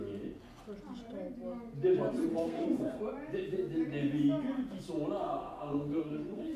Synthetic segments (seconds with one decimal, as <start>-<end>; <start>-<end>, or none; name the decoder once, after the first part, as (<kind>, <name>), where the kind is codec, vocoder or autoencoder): 2.3-3.0 (codec, SNAC); 5.2-6.6